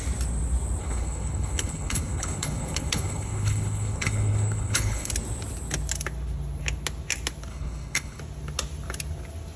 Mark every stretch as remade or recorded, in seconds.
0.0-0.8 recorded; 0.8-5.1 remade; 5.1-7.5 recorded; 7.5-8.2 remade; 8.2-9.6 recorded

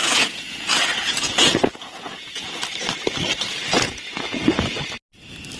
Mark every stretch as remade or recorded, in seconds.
0.0-2.6 remade; 2.6-3.7 recorded; 3.7-4.8 remade; 4.8-5.6 recorded

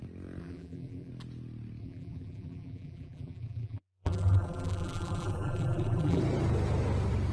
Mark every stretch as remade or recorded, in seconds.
0.0-0.4 recorded; 0.4-1.1 remade; 1.1-1.8 recorded; 1.8-6.2 remade; 6.2-7.3 recorded

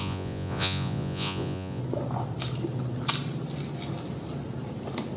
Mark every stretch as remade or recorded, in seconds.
0.0-1.8 remade; 1.8-5.2 recorded

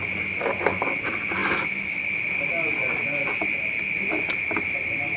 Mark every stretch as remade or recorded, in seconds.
0.0-5.2 recorded

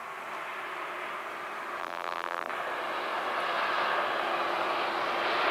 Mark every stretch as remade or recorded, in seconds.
0.0-1.8 recorded; 1.8-2.5 remade; 2.5-5.5 recorded

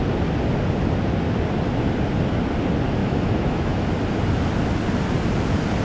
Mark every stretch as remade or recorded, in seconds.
0.0-3.0 recorded; 3.0-3.9 remade; 3.9-5.8 recorded